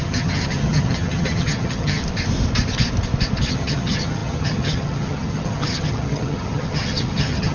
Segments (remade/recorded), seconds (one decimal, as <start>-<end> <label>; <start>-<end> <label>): 0.0-2.0 remade; 2.0-3.5 recorded; 3.5-7.5 remade